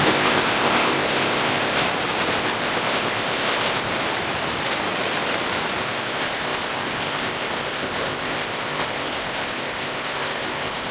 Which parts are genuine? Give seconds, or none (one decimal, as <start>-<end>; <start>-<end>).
1.8-2.4; 3.9-5.8

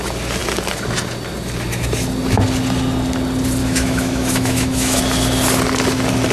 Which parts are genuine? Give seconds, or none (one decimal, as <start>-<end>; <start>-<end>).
0.0-3.6; 5.0-6.3

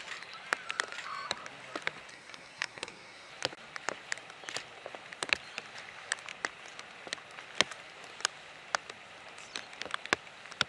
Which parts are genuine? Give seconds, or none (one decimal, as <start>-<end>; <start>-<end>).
0.0-2.1; 3.3-10.7

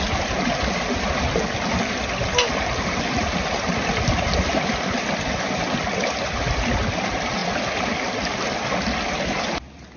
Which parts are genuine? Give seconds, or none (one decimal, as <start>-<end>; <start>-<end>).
0.0-10.0

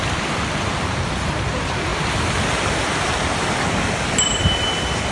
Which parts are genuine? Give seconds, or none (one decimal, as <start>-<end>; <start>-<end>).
0.0-5.1

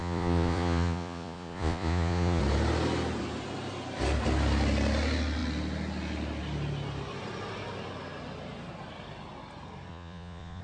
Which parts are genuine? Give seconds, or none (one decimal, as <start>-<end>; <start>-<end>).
2.4-9.9

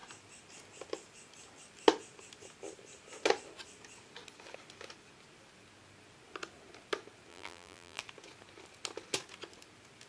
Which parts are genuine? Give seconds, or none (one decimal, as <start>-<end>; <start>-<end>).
0.0-7.3; 8.0-10.1

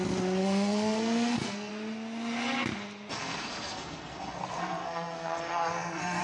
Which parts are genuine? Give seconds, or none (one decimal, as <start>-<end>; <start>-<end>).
0.0-0.4; 1.7-3.1